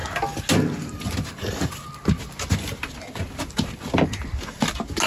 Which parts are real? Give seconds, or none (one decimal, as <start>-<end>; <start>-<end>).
0.0-5.1